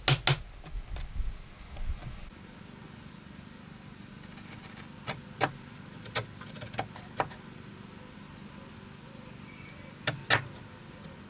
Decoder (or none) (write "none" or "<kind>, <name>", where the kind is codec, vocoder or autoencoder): none